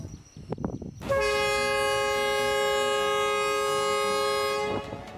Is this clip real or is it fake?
real